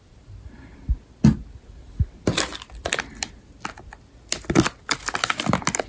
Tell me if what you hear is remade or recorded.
recorded